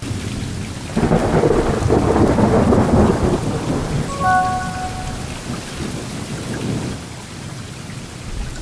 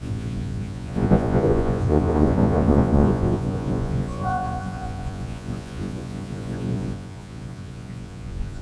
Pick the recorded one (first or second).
first